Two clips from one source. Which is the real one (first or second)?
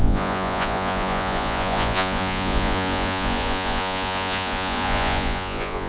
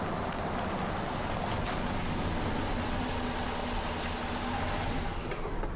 second